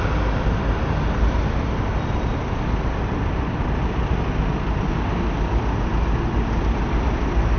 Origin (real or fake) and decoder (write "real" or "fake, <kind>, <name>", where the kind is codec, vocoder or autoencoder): real